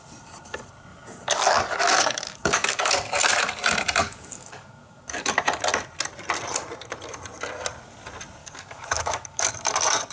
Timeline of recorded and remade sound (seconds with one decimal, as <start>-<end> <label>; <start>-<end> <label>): 0.0-0.9 recorded; 0.9-3.2 remade; 3.2-4.0 recorded; 4.0-5.3 remade; 5.3-8.4 recorded; 8.4-9.5 remade; 9.5-10.1 recorded